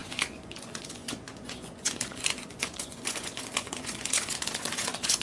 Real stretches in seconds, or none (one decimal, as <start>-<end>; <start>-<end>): none